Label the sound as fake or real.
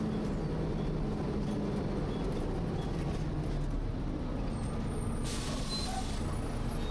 real